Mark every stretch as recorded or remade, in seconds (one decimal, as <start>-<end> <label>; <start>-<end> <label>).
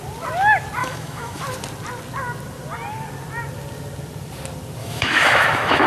0.0-0.8 recorded; 0.8-1.4 remade; 1.4-4.8 recorded; 4.8-5.9 remade